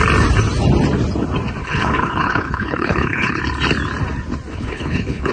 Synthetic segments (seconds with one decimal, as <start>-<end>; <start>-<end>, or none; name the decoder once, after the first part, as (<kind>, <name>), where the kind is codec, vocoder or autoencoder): 1.6-3.4 (codec, HILCodec); 4.5-5.3